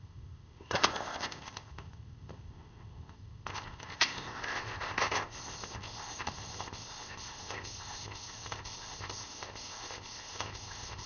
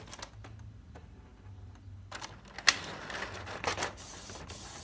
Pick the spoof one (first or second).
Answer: first